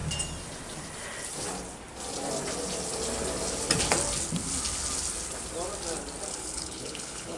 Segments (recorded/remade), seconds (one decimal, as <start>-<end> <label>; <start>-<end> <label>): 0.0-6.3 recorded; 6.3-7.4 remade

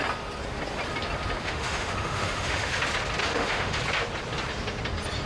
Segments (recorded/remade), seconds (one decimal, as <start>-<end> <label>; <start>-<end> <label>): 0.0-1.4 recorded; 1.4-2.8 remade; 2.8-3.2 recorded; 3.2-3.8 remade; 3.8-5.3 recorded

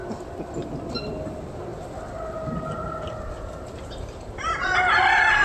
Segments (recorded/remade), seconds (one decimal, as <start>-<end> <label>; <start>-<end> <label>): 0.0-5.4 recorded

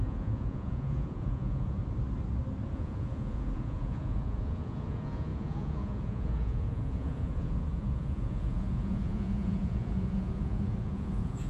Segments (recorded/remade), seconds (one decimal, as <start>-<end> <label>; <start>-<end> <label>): 0.0-1.8 remade; 1.8-2.7 recorded; 2.7-11.5 remade

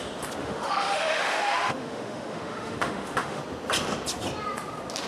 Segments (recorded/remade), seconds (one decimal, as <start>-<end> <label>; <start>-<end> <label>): 0.0-0.4 recorded; 0.4-3.4 remade; 3.4-5.1 recorded